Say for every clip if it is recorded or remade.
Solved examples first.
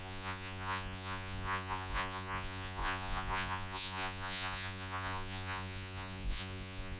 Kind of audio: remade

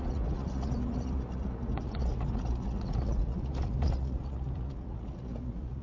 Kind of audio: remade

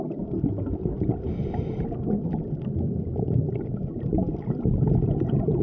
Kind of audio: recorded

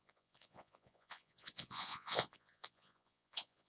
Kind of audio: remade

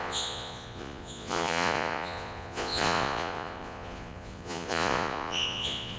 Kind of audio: remade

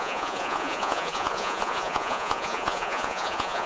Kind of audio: remade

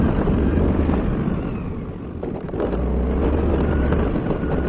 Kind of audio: recorded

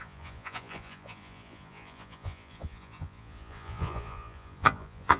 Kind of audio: remade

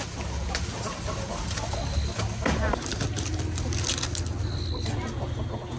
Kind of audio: recorded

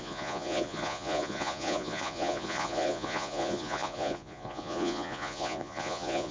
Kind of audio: remade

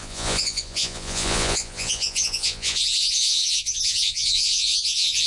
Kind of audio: remade